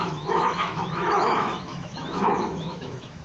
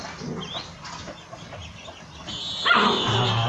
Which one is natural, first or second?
second